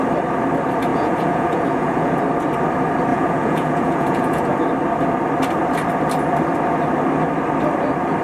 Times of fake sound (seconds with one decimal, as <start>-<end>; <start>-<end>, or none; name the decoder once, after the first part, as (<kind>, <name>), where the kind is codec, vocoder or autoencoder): 0.9-2.2 (vocoder, Vocos); 3.1-4.4